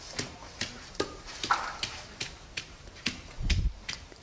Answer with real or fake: fake